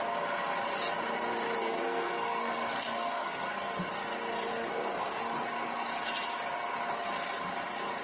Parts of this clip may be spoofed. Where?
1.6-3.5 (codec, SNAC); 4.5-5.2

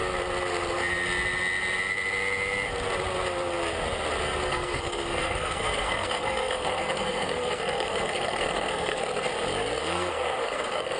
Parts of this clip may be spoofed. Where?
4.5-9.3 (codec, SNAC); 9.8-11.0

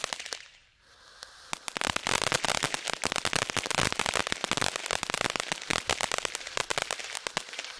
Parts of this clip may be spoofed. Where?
none

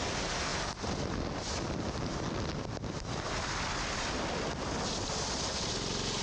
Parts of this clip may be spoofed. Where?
none

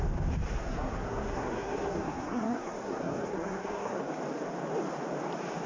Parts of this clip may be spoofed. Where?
0.6-4.0 (codec, SNAC)